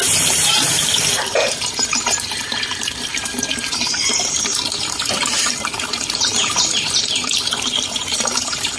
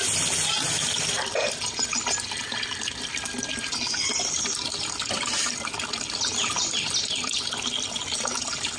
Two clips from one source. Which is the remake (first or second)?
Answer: first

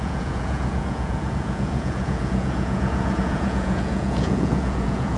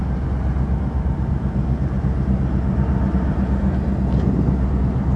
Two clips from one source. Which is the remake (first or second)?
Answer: first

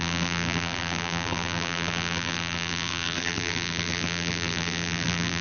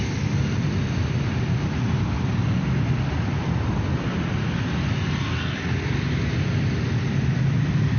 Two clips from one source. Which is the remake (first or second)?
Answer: first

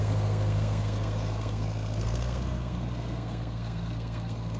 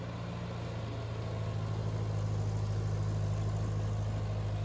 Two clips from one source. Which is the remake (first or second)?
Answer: first